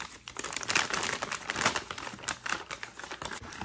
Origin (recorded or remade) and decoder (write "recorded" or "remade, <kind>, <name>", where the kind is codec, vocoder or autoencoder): recorded